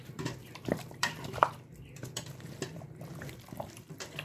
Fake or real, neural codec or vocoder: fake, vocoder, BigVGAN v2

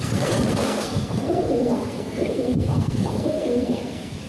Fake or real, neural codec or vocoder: fake, codec, SNAC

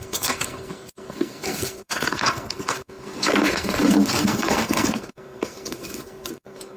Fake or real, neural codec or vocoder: fake, codec, SNAC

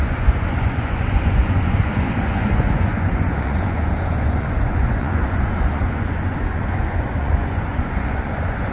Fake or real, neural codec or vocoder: fake, vocoder, Vocos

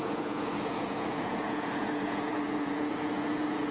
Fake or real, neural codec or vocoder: fake, vocoder, Vocos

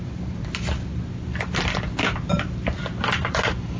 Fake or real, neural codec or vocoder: real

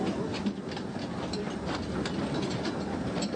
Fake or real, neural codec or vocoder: real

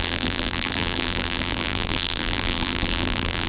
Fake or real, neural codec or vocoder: fake, vocoder, BigVGAN v2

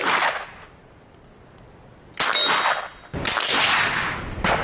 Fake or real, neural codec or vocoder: real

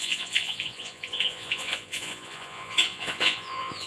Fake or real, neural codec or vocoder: fake, vocoder, Vocos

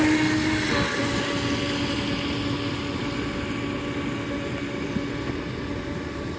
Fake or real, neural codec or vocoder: real